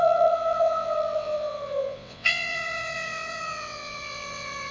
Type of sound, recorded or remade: remade